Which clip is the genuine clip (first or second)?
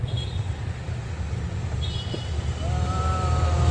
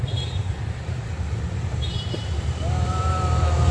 first